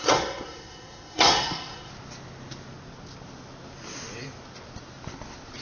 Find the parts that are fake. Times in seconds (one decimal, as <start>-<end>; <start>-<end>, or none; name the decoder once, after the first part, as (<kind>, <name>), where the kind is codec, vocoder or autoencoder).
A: 0.0-1.9 (codec, SNAC)